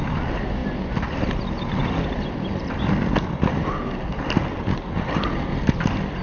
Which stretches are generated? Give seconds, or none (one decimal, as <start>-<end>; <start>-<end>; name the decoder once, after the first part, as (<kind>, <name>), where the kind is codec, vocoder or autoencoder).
none